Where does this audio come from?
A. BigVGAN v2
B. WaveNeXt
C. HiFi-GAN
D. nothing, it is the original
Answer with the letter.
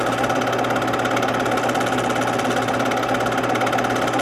D